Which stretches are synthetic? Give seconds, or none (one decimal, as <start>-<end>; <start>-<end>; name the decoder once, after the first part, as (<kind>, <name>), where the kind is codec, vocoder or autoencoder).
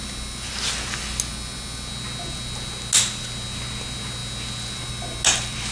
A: none